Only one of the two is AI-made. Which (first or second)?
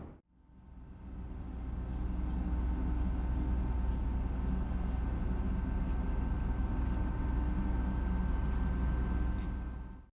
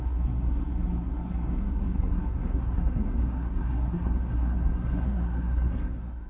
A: second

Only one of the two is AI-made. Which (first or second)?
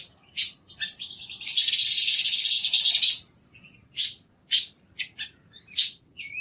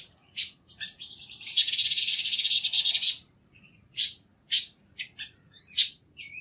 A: second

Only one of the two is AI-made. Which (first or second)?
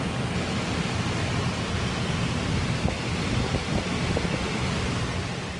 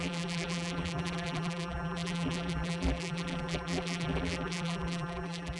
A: second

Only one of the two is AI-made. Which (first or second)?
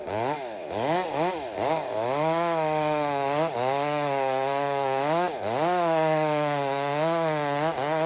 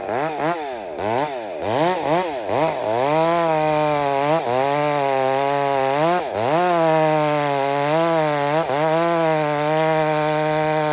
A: first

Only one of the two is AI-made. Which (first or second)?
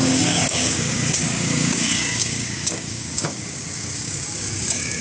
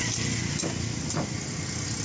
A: first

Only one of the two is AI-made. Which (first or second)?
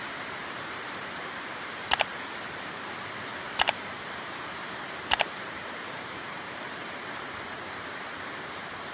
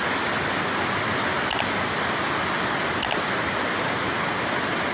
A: first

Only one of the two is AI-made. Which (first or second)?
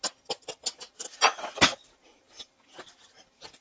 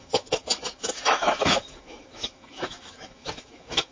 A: second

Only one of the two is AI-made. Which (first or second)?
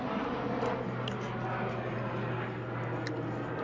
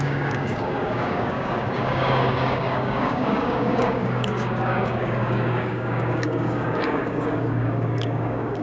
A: second